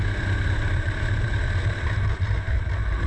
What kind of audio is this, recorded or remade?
recorded